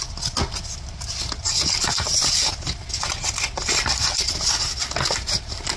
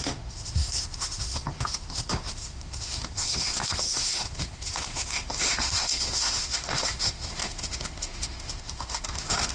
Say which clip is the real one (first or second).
first